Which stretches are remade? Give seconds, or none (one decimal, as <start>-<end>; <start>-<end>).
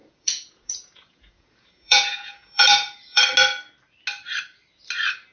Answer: 0.0-3.2